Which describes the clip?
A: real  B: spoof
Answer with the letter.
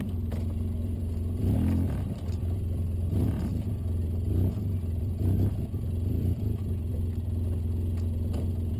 B